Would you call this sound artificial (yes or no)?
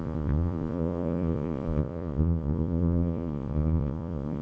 yes